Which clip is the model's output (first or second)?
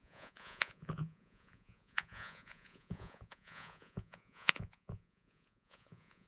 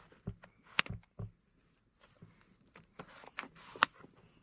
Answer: first